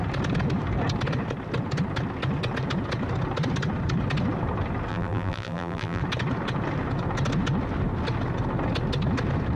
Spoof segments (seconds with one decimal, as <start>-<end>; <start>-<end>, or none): 4.9-6.0